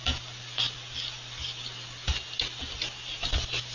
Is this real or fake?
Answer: real